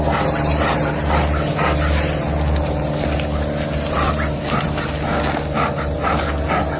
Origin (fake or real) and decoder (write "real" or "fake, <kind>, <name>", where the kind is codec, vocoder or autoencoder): real